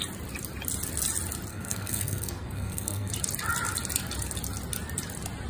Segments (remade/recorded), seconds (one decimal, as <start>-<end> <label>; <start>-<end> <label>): 0.0-1.5 recorded; 1.5-3.1 remade; 3.1-5.5 recorded